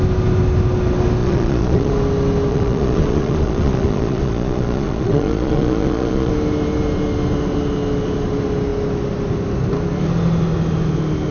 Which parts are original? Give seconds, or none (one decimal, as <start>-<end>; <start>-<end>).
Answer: 0.0-1.2; 1.9-2.5; 6.3-11.3